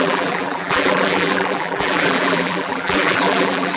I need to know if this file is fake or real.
fake